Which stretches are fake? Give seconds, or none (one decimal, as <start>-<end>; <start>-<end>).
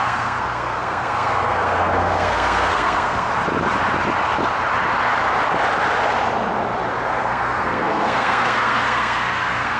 0.0-3.3; 7.2-9.8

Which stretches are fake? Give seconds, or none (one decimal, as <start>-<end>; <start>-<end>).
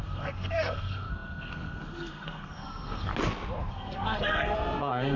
0.0-3.1; 3.7-5.2